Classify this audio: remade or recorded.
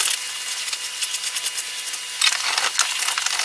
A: recorded